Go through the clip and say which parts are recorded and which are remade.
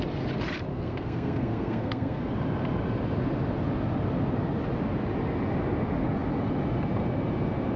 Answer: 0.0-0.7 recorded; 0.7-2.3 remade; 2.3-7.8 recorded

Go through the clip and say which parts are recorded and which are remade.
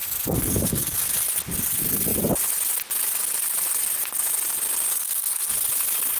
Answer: 0.0-1.0 remade; 1.0-4.9 recorded; 4.9-5.5 remade; 5.5-6.2 recorded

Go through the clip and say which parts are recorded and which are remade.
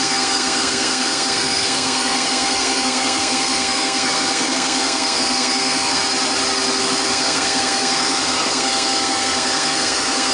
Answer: 0.0-6.0 remade; 6.0-6.8 recorded; 6.8-10.3 remade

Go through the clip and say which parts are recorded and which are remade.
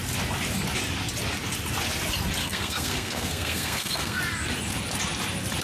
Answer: 0.0-2.4 recorded; 2.4-4.2 remade; 4.2-5.6 recorded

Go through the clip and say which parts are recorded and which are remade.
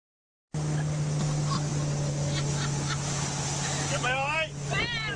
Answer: 0.0-5.2 recorded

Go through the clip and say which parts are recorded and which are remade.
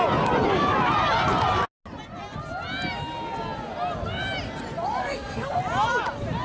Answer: 0.0-5.0 recorded; 5.0-5.6 remade; 5.6-6.4 recorded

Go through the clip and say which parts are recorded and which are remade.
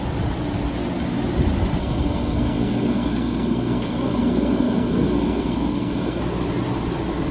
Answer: 0.0-1.8 recorded; 1.8-6.2 remade; 6.2-7.3 recorded